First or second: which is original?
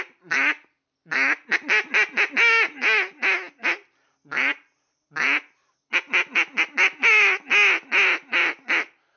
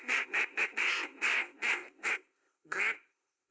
first